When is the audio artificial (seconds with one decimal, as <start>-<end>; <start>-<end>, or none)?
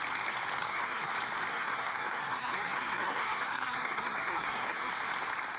0.6-1.1; 1.5-4.9